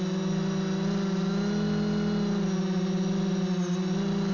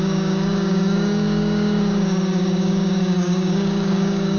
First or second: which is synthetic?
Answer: second